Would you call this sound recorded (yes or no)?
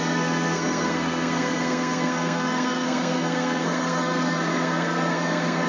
no